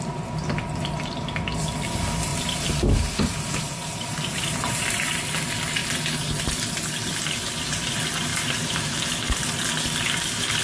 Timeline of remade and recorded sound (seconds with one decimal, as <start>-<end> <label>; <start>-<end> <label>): 0.0-2.3 recorded; 2.3-5.1 remade; 5.1-8.3 recorded; 8.3-9.1 remade; 9.1-10.6 recorded

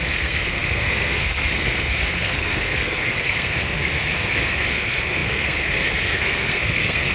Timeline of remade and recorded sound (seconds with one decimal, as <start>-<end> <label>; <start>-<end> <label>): 0.0-7.1 remade

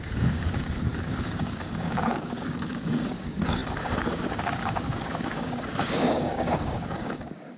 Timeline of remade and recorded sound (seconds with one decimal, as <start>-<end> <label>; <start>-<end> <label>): 0.0-7.6 remade

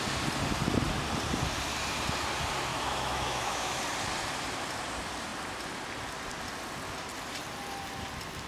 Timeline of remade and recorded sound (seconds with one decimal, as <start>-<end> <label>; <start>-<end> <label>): 0.0-2.7 recorded; 2.7-3.8 remade; 3.8-8.5 recorded

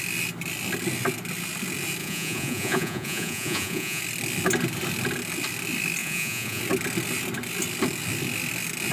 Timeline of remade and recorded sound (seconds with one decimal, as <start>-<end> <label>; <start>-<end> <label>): 0.0-2.0 recorded; 2.0-4.0 remade; 4.0-6.0 recorded; 6.0-6.6 remade; 6.6-8.9 recorded

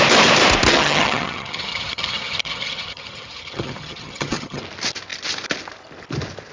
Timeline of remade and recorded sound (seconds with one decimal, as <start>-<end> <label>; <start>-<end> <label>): 0.0-0.7 recorded; 0.7-4.6 remade; 4.6-6.5 recorded